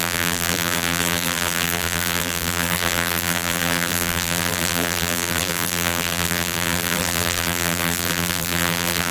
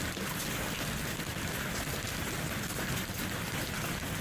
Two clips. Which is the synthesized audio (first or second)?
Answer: first